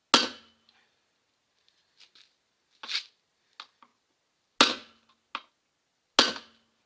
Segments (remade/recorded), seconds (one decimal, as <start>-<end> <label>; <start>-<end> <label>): 0.0-6.9 recorded